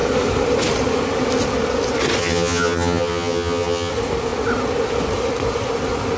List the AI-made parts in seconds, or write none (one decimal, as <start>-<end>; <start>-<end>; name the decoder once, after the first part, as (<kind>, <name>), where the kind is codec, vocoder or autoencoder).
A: 2.2-3.9 (vocoder, HiFi-GAN)